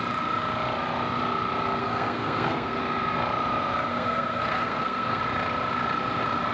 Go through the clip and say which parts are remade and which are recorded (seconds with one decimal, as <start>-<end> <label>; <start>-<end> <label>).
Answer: 0.0-1.8 recorded; 1.8-2.8 remade; 2.8-3.9 recorded; 3.9-5.2 remade; 5.2-6.5 recorded

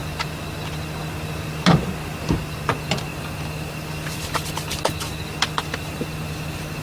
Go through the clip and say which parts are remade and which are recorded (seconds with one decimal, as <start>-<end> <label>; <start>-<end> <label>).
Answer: 0.0-3.1 recorded; 3.1-6.8 remade

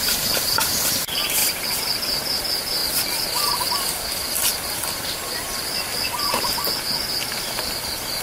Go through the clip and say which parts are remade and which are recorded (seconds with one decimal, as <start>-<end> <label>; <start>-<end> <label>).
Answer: 0.0-2.8 remade; 2.8-7.7 recorded; 7.7-8.2 remade

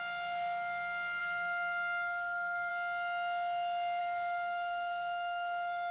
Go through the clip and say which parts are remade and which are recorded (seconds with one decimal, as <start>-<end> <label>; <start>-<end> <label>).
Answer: 0.0-1.2 recorded; 1.2-2.7 remade; 2.7-4.0 recorded; 4.0-5.9 remade

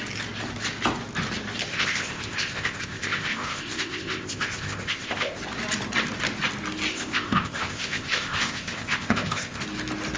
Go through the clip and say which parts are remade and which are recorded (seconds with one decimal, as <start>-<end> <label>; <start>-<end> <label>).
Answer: 0.0-1.7 recorded; 1.7-5.4 remade; 5.4-6.9 recorded; 6.9-9.6 remade; 9.6-10.2 recorded

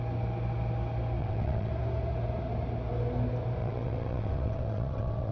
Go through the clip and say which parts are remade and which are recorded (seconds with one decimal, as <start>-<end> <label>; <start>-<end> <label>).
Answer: 0.0-1.2 recorded; 1.2-1.7 remade; 1.7-3.6 recorded; 3.6-5.3 remade